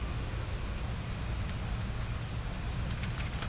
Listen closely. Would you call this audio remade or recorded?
recorded